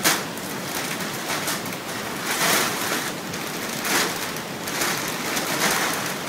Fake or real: real